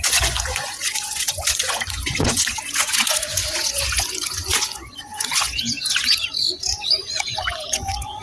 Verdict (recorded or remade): remade